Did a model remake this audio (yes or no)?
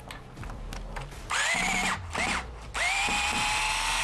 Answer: no